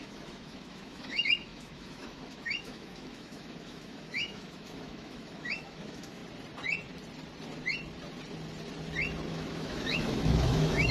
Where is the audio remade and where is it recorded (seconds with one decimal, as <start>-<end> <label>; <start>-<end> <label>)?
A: 0.0-6.2 remade; 6.2-9.3 recorded; 9.3-10.9 remade